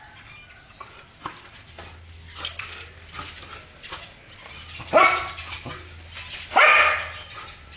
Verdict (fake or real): real